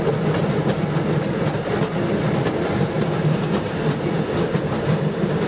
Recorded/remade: recorded